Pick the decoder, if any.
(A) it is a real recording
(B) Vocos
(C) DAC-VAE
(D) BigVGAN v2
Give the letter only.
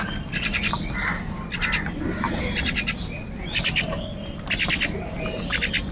A